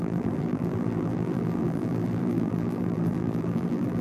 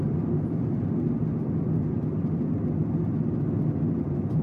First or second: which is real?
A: second